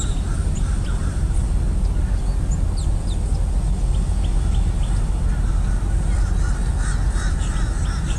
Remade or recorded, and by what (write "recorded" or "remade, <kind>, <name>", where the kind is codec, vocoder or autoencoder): recorded